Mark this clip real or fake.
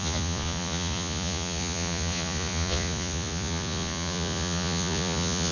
fake